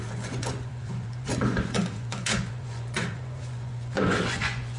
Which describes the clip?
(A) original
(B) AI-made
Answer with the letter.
B